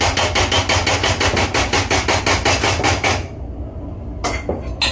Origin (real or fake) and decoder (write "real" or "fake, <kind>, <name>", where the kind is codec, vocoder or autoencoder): real